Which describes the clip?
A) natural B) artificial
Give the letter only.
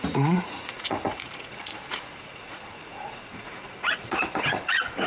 B